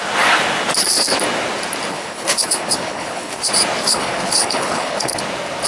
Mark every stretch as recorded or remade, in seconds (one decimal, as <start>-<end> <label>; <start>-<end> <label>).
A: 0.0-1.9 recorded; 1.9-3.4 remade; 3.4-3.8 recorded; 3.8-5.2 remade; 5.2-5.7 recorded